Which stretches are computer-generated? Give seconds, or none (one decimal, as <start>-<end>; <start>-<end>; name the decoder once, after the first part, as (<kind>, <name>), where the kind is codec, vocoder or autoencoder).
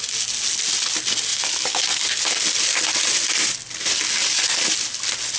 none